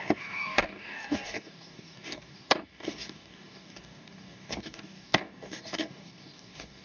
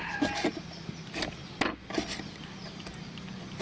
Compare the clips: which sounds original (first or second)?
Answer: second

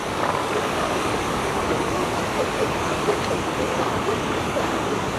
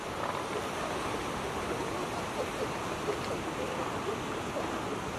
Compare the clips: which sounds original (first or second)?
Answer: second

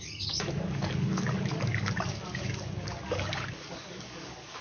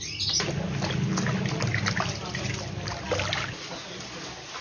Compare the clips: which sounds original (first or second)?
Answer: second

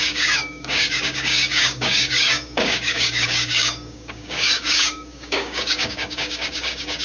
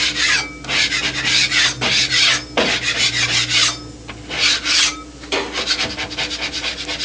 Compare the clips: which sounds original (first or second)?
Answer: second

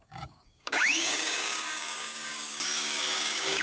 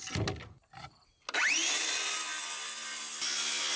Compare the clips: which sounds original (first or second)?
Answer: second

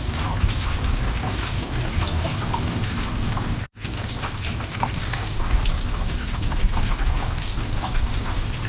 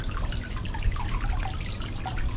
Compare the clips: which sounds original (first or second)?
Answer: second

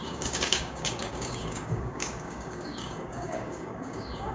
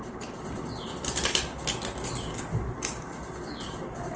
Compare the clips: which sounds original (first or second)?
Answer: second